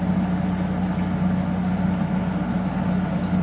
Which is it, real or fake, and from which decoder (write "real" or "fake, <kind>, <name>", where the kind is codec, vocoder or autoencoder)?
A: real